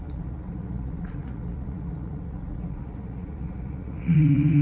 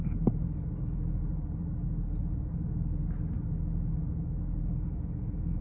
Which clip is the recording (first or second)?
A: second